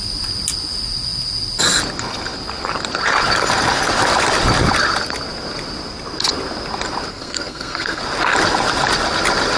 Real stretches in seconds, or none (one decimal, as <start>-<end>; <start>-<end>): 0.0-7.1; 8.0-9.6